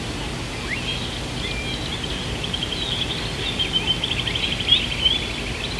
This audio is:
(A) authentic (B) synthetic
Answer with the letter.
A